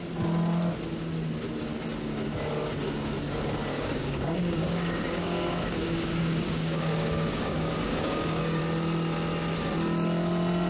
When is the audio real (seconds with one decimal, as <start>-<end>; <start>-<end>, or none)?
0.0-3.7; 8.6-10.7